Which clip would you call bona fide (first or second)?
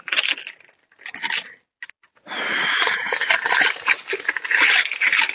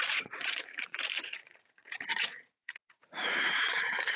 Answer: first